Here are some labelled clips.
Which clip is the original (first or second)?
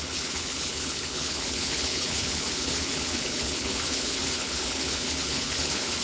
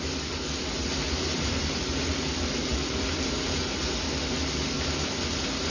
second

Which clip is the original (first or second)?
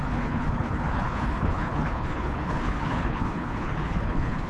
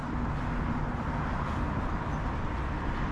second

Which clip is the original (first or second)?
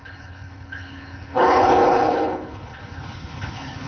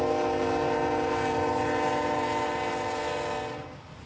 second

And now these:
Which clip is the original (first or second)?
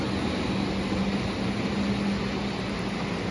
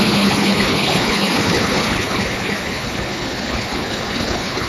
first